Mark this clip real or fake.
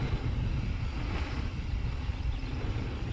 real